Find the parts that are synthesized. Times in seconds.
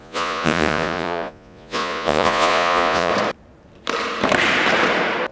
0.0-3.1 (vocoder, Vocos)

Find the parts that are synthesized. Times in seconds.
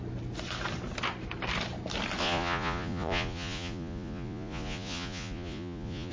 2.2-6.1 (vocoder, Vocos)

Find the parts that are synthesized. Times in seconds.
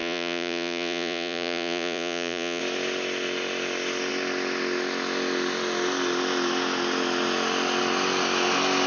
0.0-2.6 (vocoder, Vocos)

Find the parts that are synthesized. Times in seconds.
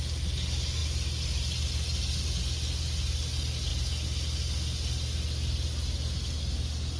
none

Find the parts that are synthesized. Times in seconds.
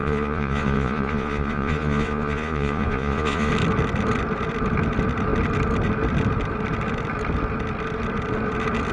0.0-3.5 (vocoder, Vocos)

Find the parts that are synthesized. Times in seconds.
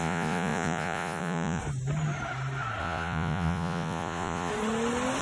0.0-1.6 (vocoder, Vocos); 2.8-4.5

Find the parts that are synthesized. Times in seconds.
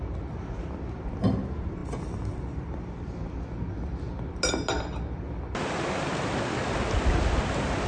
none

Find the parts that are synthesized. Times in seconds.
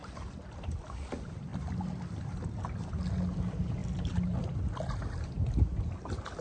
none